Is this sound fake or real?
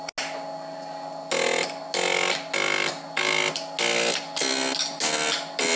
real